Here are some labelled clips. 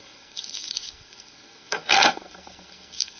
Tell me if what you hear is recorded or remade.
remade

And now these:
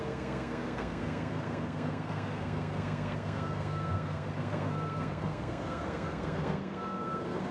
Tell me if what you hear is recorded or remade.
remade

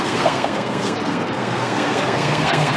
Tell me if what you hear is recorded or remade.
remade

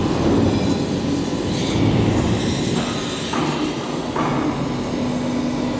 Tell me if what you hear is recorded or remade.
recorded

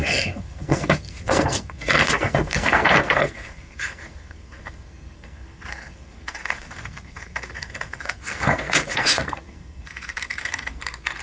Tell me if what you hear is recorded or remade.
remade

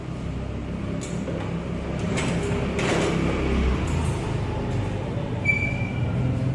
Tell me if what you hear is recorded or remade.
recorded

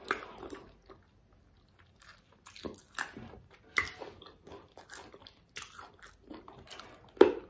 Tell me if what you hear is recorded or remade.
recorded